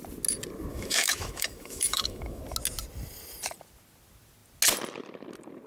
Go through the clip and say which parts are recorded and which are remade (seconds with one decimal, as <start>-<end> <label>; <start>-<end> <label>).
0.0-0.7 recorded; 0.7-2.4 remade; 2.4-5.7 recorded